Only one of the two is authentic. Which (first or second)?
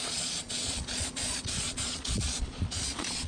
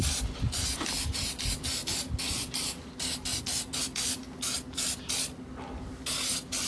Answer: second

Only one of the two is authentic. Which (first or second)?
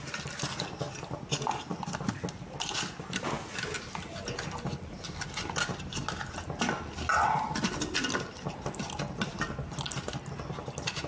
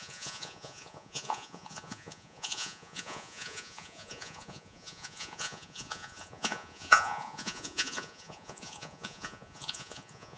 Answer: first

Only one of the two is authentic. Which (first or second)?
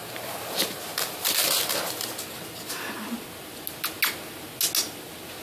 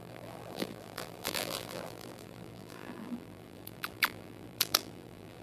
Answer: first